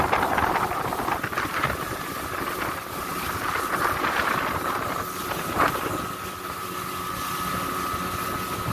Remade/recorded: recorded